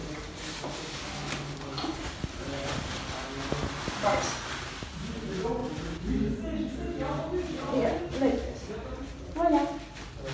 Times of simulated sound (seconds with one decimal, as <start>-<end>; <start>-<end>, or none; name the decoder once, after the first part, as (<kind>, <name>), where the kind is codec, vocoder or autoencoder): none